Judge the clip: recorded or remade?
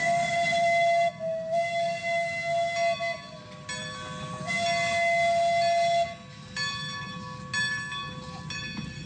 recorded